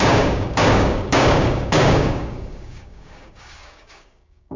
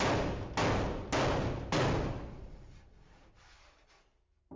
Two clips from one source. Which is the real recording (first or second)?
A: second